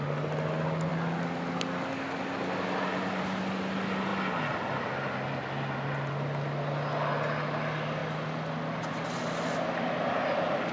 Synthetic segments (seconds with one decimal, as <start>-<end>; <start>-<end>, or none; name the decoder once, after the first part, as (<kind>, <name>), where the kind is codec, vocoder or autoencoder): none